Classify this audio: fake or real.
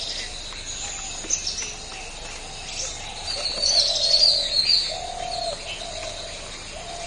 real